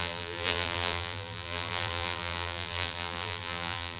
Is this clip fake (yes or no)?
yes